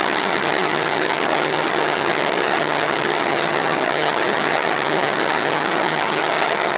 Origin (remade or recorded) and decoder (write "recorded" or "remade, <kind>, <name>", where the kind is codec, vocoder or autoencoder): remade, vocoder, HiFi-GAN